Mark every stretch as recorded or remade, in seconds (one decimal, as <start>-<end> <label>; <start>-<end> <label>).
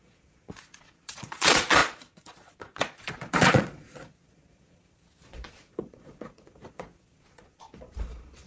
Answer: 0.0-8.5 remade